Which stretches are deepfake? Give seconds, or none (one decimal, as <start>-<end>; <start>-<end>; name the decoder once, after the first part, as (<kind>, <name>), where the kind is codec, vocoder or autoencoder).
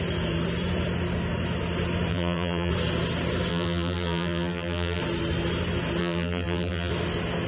2.1-2.7 (vocoder, BigVGAN v2); 3.5-5.0; 6.0-6.9